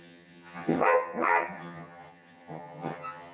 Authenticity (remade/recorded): remade